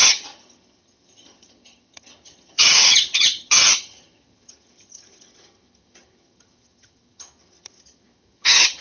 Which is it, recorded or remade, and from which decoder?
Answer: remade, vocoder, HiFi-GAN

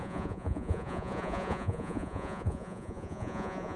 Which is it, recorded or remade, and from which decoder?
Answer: remade, vocoder, Vocos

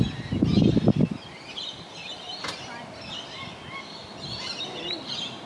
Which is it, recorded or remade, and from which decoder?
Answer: recorded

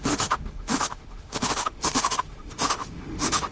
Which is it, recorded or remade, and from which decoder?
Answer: remade, autoencoder, DAC-VAE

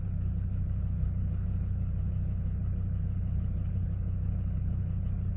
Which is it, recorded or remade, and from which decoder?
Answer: remade, codec, HILCodec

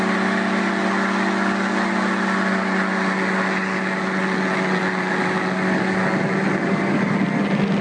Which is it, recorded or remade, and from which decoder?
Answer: recorded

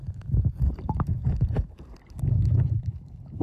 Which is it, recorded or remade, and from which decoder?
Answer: recorded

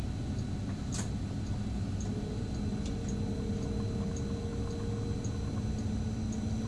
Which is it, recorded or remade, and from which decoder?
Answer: recorded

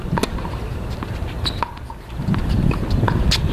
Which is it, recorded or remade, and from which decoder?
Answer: recorded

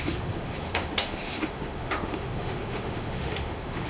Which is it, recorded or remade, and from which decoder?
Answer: remade, autoencoder, DAC-VAE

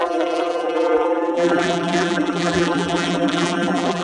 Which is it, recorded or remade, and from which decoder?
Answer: remade, vocoder, BigVGAN v2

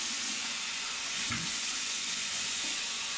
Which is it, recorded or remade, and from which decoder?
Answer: remade, vocoder, Vocos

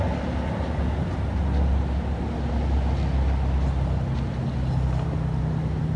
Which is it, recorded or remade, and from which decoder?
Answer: recorded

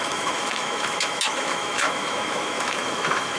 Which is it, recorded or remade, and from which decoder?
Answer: remade, autoencoder, DAC-VAE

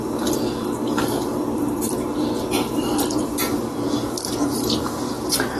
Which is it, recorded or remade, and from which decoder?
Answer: recorded